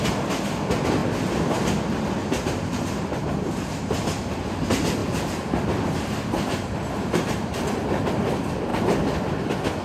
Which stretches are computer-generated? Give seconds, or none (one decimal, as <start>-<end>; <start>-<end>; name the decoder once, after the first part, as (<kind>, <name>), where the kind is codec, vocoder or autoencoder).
2.2-3.9 (vocoder, BigVGAN v2); 5.0-7.7